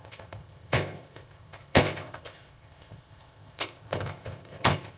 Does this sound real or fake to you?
fake